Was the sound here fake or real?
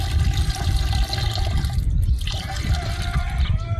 fake